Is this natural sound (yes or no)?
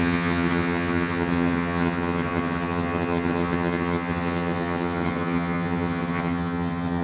no